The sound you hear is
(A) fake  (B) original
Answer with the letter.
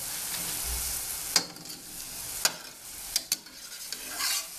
B